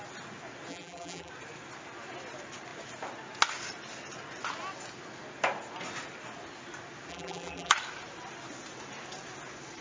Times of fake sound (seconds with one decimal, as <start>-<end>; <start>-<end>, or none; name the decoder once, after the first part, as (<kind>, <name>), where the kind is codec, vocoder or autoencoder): 0.7-1.3 (vocoder, BigVGAN v2); 7.1-7.7